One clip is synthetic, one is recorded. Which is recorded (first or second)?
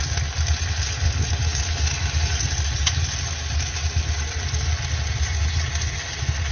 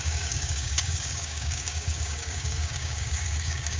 first